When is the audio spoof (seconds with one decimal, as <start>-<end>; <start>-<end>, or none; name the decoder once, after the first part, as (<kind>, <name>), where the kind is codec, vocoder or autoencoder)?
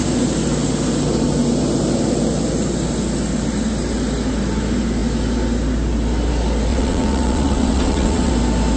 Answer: 6.7-8.3 (vocoder, WaveNeXt)